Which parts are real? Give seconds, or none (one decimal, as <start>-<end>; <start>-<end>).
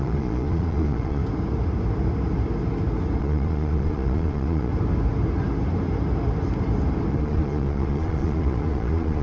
1.2-3.2; 4.7-7.1